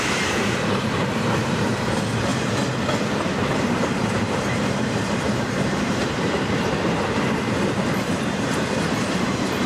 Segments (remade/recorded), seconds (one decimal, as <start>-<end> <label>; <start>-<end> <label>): 0.0-2.3 remade; 2.3-3.5 recorded; 3.5-9.7 remade